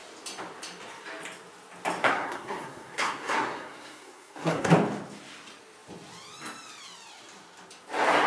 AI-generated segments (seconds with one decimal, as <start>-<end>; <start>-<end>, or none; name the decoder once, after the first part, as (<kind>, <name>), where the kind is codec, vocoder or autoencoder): 2.0-4.7 (codec, SNAC)